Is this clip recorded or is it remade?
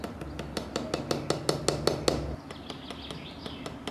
recorded